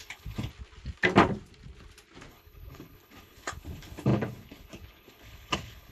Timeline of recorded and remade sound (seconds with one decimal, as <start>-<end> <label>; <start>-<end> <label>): 0.0-0.5 remade; 0.5-2.3 recorded; 2.3-5.9 remade